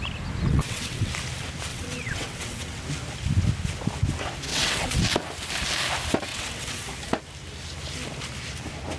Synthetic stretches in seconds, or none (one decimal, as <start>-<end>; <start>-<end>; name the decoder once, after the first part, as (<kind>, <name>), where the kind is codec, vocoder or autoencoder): 0.5-1.1 (vocoder, WaveNeXt); 1.7-2.8; 4.5-5.0; 6.3-6.9